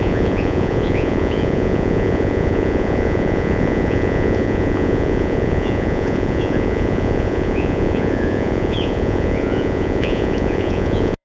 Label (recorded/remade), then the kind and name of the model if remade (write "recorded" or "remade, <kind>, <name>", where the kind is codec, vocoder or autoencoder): remade, vocoder, Vocos